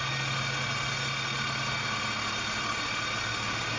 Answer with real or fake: real